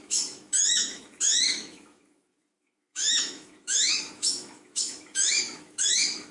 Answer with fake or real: fake